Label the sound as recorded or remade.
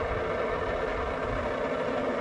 recorded